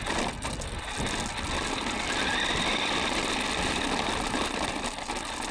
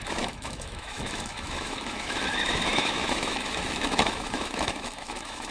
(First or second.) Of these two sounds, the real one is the first